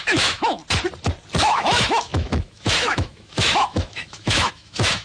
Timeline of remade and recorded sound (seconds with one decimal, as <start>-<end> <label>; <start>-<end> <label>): 0.0-0.6 remade; 0.6-1.4 recorded; 1.4-5.0 remade